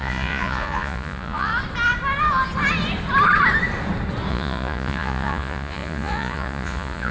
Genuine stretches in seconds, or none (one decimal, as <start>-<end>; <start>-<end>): 1.5-4.3